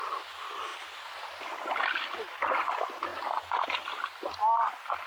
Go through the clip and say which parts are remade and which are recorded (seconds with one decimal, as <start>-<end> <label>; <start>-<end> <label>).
0.0-3.1 remade; 3.1-5.1 recorded